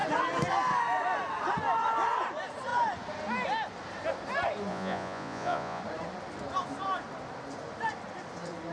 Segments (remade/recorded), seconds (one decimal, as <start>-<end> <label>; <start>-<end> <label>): 0.0-4.7 recorded; 4.7-5.8 remade; 5.8-8.7 recorded